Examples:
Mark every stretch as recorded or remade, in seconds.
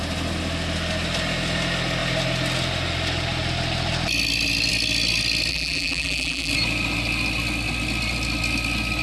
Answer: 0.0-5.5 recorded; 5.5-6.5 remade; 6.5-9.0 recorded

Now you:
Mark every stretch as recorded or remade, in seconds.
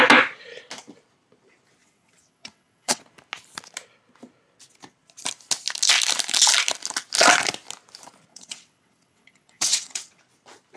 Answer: 0.0-1.8 recorded; 1.8-3.0 remade; 3.0-8.3 recorded; 8.3-10.2 remade; 10.2-10.8 recorded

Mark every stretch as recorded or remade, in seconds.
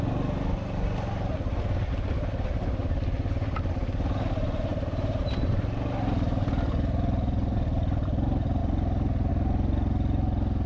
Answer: 0.0-10.7 recorded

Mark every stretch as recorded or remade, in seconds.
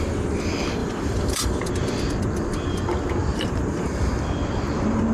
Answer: 0.0-0.8 recorded; 0.8-1.7 remade; 1.7-3.2 recorded; 3.2-4.1 remade; 4.1-5.1 recorded